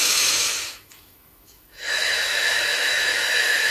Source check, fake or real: fake